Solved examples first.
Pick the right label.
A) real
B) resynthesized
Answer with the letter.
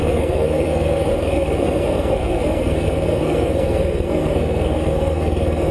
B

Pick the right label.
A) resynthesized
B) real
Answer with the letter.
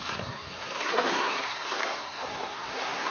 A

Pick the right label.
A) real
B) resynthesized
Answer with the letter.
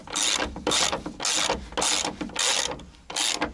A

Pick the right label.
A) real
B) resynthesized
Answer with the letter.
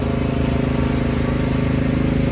A